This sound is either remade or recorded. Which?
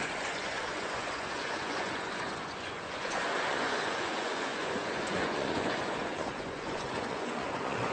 remade